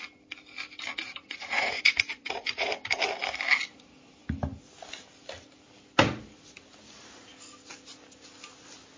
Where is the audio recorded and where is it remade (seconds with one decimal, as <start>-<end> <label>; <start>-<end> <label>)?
0.0-1.0 recorded; 1.0-2.7 remade; 2.7-9.0 recorded